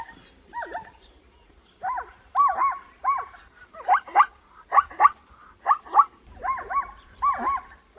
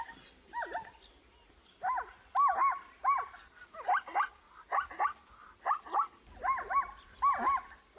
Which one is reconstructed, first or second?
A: first